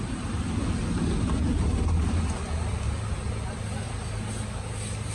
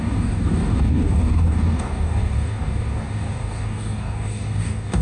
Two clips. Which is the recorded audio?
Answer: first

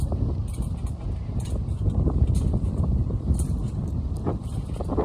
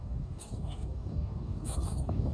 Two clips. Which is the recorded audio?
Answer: first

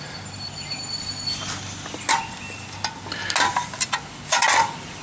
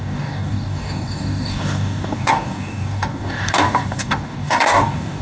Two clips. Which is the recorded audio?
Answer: first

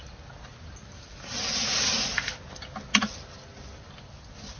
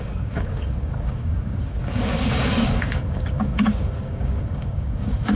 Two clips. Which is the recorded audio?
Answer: first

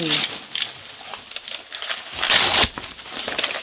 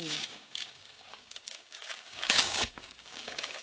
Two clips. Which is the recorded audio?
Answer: first